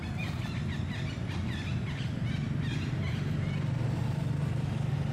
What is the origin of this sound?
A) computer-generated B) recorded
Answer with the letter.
B